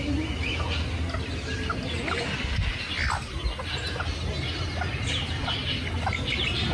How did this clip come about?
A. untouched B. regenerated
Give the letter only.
A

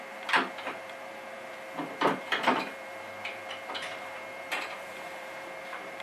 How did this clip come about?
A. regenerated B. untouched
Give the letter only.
A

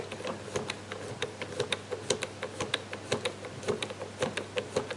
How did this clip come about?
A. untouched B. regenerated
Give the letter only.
A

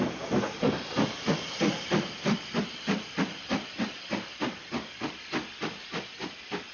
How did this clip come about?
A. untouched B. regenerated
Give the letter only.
A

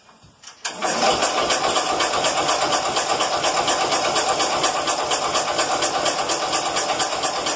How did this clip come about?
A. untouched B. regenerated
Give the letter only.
A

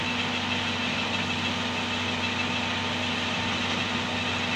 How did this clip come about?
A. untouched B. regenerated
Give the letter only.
A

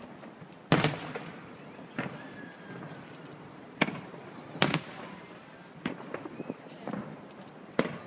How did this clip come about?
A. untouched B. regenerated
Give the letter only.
A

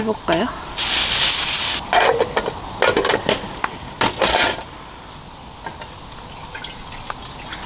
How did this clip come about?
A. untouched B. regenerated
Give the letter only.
A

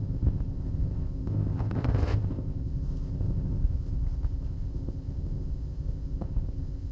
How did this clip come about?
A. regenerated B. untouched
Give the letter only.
A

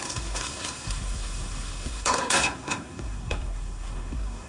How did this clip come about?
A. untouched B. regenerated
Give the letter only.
B